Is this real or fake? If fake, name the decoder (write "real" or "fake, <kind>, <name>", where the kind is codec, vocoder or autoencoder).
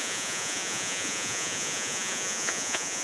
fake, vocoder, Vocos